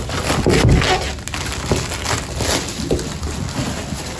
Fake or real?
real